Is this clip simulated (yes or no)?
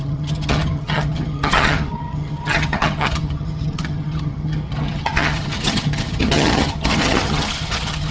yes